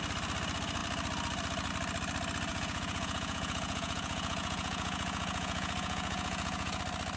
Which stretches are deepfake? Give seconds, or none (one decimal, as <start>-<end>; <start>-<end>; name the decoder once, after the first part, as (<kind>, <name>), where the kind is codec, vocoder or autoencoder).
2.5-6.8 (vocoder, Vocos)